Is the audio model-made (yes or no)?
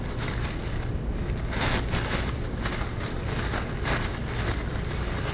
no